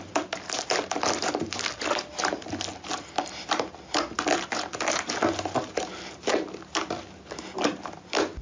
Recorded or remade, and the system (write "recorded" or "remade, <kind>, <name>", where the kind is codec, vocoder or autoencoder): recorded